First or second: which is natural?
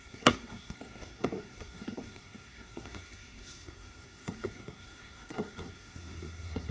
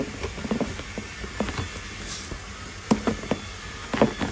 second